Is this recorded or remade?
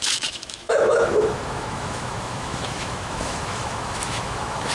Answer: remade